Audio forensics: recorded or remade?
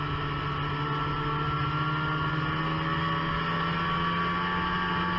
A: recorded